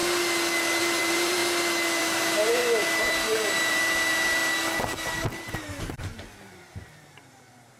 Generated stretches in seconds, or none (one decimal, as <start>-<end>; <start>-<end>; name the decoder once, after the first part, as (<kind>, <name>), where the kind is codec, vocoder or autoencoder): 0.8-1.4 (vocoder, BigVGAN v2); 2.0-4.4; 5.8-7.8